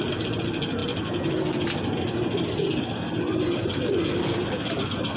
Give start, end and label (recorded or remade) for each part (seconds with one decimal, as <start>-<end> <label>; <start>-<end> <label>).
0.0-5.2 recorded